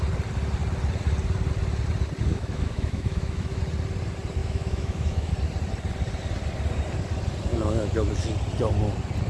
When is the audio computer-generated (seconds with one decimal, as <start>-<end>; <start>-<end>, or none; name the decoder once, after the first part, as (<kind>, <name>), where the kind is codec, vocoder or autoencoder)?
2.3-3.6 (autoencoder, DAC-VAE); 4.4-5.3; 7.5-8.1